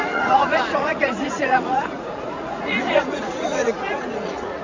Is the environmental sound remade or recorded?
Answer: remade